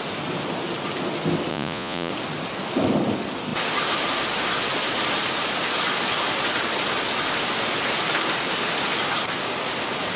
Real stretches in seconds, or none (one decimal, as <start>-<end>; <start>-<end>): 0.0-1.5; 2.1-10.2